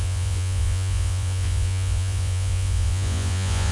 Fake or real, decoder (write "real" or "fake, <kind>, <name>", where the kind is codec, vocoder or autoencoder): fake, vocoder, Vocos